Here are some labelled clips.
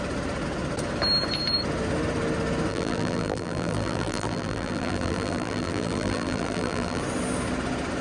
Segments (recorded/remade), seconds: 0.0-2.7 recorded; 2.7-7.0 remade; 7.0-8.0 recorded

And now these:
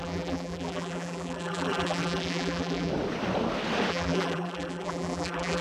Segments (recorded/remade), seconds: 0.0-2.9 remade; 2.9-3.9 recorded; 3.9-5.6 remade

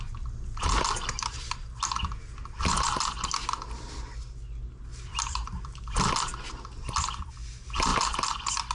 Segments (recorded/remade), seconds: 0.0-4.9 recorded; 4.9-6.0 remade; 6.0-8.7 recorded